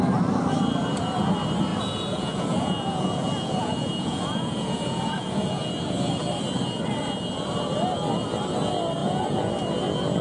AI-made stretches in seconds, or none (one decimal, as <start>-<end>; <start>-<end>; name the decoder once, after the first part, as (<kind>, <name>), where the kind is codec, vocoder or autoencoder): 1.7-5.7 (vocoder, Vocos); 9.0-9.5